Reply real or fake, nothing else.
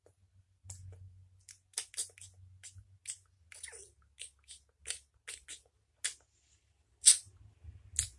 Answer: real